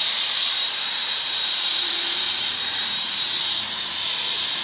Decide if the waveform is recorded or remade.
remade